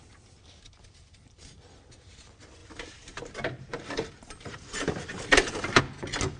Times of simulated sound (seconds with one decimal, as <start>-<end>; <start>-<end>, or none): 2.6-5.8